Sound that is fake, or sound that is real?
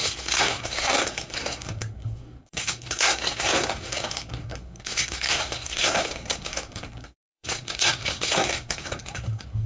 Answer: fake